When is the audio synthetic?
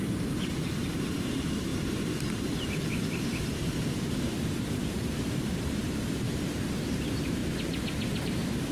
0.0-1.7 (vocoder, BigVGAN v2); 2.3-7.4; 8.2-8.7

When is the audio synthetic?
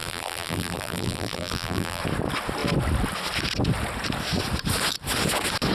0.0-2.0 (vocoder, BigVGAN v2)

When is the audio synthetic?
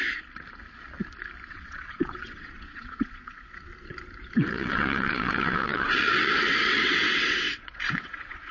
1.5-3.7 (vocoder, WaveNeXt); 4.5-8.5